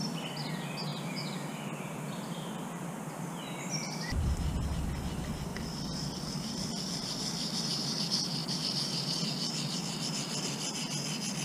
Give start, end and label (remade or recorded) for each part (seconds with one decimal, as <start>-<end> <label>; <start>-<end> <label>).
0.0-0.9 recorded; 0.9-4.7 remade; 4.7-5.5 recorded; 5.5-8.0 remade; 8.0-8.4 recorded; 8.4-9.2 remade; 9.2-11.4 recorded